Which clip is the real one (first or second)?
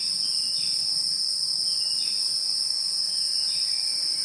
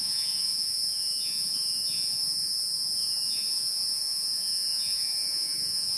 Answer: first